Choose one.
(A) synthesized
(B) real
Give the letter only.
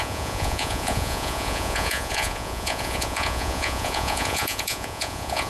A